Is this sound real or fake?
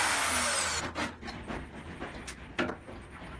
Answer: real